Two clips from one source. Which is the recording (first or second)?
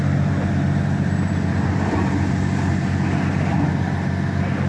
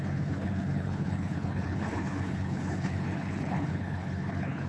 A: first